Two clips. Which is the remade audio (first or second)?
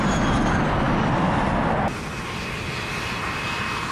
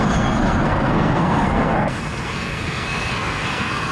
second